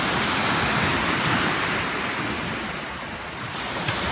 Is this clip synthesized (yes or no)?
no